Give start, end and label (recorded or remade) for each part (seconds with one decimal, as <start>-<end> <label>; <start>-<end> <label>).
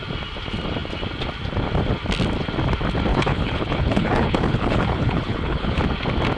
0.0-3.1 recorded; 3.1-5.8 remade; 5.8-6.4 recorded